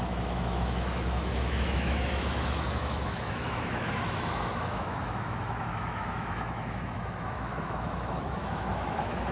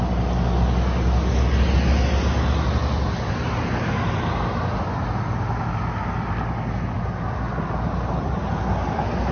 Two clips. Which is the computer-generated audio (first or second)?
first